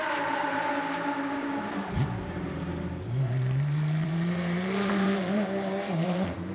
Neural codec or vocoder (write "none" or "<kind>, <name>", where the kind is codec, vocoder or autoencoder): vocoder, BigVGAN v2